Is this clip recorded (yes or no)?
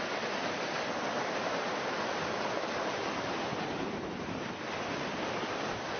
yes